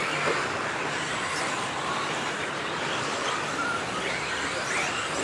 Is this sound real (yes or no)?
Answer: no